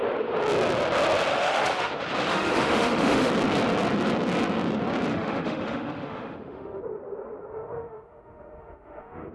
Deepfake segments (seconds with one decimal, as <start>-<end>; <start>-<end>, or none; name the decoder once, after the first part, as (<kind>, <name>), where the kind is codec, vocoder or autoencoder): 1.3-1.9 (autoencoder, DAC-VAE); 2.3-3.3; 5.1-6.8; 7.5-9.3